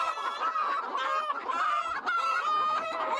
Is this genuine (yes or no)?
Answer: yes